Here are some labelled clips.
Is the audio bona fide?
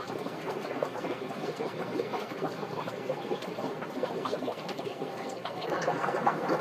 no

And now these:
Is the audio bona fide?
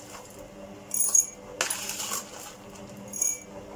yes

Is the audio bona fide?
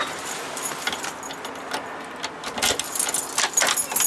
yes